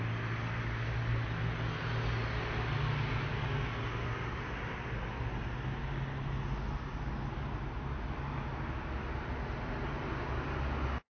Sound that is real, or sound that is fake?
real